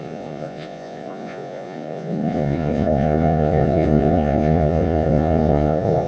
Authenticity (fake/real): fake